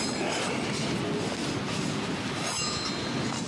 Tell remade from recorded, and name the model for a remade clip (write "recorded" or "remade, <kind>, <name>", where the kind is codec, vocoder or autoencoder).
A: recorded